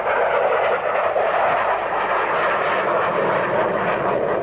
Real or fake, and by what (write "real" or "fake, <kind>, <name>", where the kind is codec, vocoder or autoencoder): real